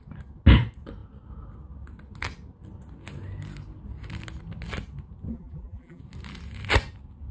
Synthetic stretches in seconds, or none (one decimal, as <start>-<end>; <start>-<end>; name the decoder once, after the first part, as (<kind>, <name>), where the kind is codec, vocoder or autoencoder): 5.3-6.0 (vocoder, BigVGAN v2)